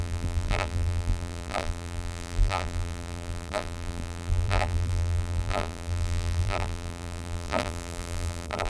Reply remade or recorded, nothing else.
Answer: remade